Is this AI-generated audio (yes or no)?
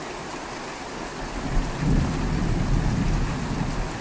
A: no